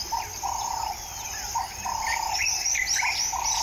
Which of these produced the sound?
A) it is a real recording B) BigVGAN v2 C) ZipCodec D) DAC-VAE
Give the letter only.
B